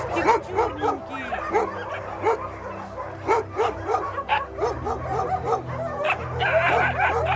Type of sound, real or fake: real